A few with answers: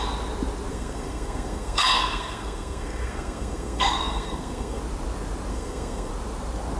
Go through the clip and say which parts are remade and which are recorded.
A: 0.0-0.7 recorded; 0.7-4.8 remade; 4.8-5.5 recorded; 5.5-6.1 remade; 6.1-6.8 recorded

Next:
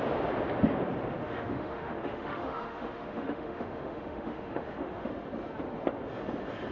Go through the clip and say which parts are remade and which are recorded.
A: 0.0-1.2 recorded; 1.2-5.1 remade; 5.1-6.7 recorded

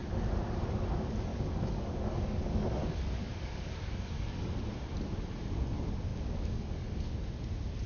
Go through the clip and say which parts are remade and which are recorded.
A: 0.0-1.3 recorded; 1.3-4.5 remade; 4.5-6.1 recorded; 6.1-7.3 remade; 7.3-7.9 recorded